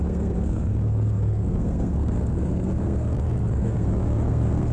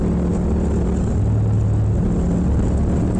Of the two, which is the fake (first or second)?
first